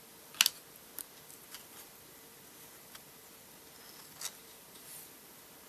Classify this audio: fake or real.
real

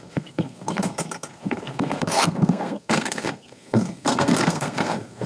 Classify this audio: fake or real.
fake